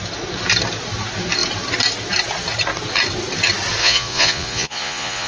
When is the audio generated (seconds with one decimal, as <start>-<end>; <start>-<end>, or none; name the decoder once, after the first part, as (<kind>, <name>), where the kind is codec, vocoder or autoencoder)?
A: 3.8-5.3 (vocoder, Vocos)